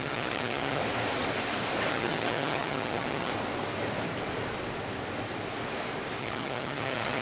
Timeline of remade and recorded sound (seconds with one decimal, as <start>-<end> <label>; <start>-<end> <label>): 0.0-0.8 remade; 0.8-1.9 recorded; 1.9-3.3 remade; 3.3-6.2 recorded; 6.2-7.2 remade